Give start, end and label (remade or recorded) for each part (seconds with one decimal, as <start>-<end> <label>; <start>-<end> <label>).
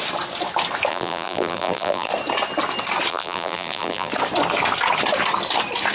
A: 0.0-0.9 recorded; 0.9-2.1 remade; 2.1-3.1 recorded; 3.1-4.1 remade; 4.1-5.9 recorded